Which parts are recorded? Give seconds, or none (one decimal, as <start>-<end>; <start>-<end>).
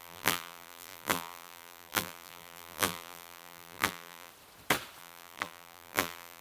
4.3-5.0